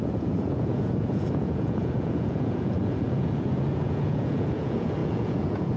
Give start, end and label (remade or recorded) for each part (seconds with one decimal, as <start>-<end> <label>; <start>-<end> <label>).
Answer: 0.0-5.8 remade